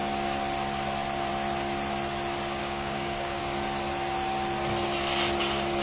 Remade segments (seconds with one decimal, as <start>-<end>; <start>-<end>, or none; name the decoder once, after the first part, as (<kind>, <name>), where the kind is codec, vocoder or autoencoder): 2.6-3.4 (codec, DAC)